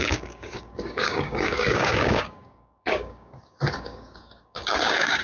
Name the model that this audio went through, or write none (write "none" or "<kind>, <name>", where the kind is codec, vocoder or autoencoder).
codec, DAC